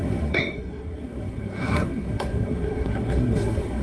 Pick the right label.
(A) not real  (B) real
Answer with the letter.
A